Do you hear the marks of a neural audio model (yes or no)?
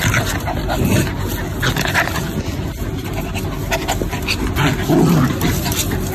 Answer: no